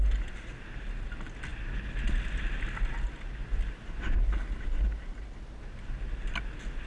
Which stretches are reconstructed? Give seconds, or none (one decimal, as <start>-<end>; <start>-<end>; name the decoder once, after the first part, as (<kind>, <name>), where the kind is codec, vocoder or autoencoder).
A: none